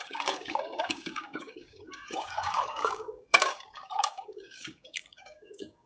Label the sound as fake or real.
fake